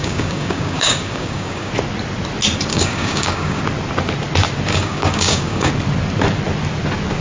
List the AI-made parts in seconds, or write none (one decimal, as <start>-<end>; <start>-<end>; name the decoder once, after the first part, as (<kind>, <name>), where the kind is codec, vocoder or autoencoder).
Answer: 0.0-1.7 (codec, DAC); 2.7-3.6; 4.7-5.7